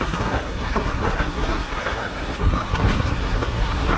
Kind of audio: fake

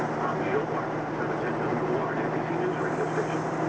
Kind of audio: real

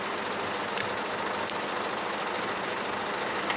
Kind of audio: real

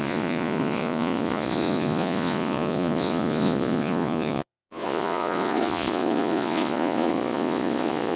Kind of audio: fake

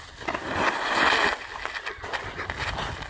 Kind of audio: real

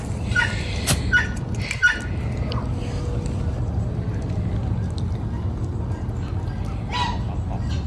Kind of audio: real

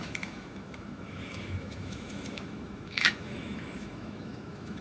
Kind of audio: fake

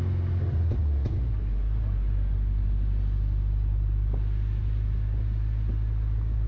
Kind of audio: real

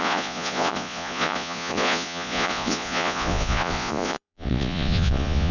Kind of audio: fake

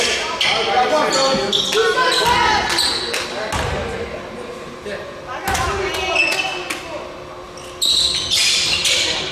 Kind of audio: real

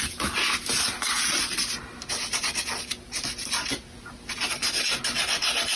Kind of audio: real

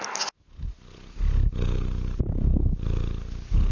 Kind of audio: real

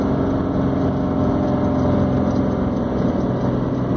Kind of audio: real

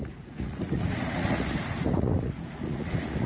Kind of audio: fake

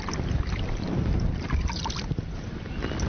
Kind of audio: real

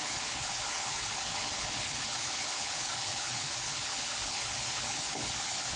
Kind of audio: fake